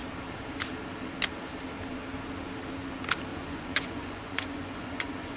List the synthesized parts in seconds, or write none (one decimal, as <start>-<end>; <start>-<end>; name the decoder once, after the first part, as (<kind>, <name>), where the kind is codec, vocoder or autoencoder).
3.3-5.4 (vocoder, Vocos)